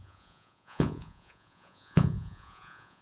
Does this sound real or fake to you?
fake